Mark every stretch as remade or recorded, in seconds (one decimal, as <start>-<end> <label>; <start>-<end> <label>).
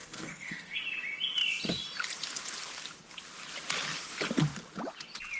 0.0-0.8 remade; 0.8-5.4 recorded